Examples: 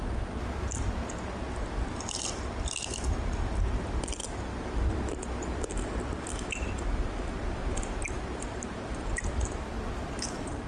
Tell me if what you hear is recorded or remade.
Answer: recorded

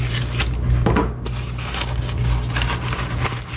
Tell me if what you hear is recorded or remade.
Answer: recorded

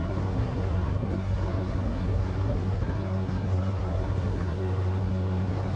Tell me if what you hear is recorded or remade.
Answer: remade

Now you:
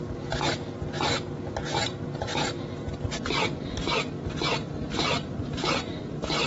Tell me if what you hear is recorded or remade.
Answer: recorded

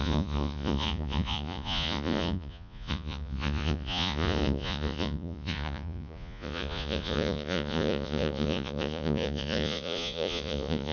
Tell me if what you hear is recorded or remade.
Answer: remade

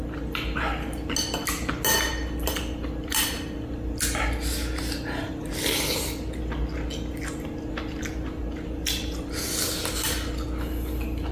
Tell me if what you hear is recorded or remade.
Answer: recorded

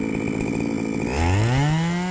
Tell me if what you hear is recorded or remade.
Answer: recorded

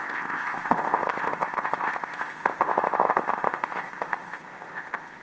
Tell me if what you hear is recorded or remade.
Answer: remade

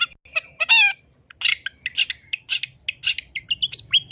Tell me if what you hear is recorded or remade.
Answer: recorded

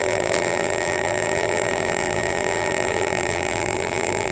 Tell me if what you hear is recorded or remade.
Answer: remade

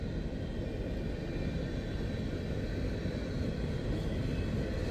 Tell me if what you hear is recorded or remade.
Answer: recorded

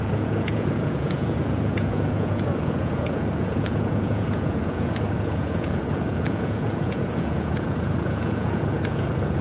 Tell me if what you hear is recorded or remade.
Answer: remade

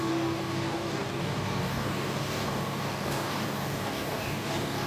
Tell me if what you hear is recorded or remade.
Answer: remade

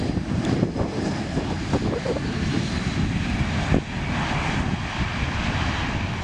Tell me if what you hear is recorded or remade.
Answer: recorded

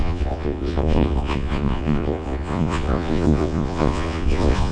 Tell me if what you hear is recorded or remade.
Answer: remade